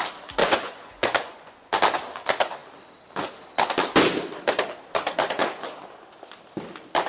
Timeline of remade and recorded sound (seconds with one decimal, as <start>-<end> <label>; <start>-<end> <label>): 0.0-0.4 recorded; 0.4-1.7 remade; 1.7-7.1 recorded